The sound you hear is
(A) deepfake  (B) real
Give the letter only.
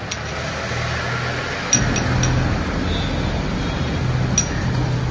B